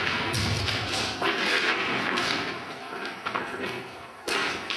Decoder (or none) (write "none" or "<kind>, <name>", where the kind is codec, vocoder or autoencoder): codec, SNAC